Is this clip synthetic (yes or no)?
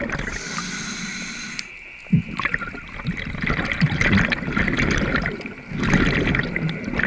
no